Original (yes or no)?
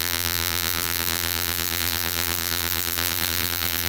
no